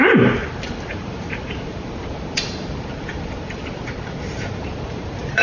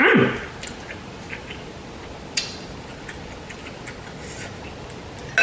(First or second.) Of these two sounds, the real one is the second